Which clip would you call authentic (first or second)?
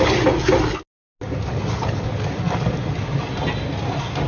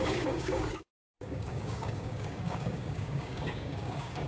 first